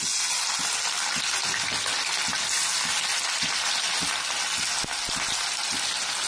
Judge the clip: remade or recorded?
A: recorded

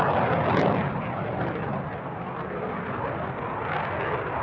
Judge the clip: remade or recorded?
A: recorded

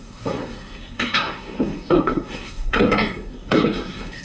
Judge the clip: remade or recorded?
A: remade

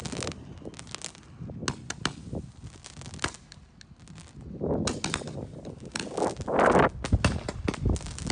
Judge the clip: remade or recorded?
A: recorded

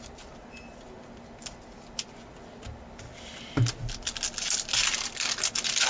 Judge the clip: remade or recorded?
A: recorded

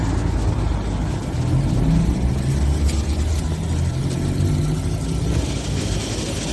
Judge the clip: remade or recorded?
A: recorded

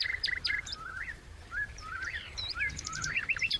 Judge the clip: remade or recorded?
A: remade